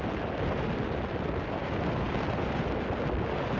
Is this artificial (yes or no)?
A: no